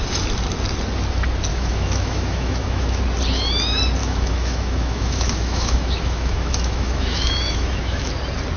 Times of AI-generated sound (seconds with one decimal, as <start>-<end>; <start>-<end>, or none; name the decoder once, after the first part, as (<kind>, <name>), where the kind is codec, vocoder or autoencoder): 1.5-3.0 (autoencoder, DAC-VAE); 4.0-8.1